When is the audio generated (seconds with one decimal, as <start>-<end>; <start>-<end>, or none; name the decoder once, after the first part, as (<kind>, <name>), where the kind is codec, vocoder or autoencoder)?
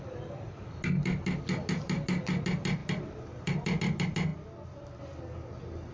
none